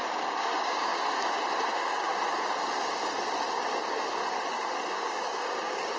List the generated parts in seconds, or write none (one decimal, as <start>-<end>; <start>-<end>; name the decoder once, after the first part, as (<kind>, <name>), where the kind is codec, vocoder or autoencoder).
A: 0.0-0.9 (codec, DAC); 1.7-2.1; 3.6-4.2; 4.9-6.0